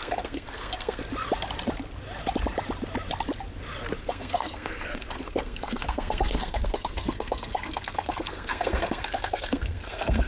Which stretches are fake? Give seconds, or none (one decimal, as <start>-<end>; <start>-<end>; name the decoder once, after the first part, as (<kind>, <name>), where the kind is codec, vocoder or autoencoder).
0.0-1.0 (codec, SNAC); 4.0-10.3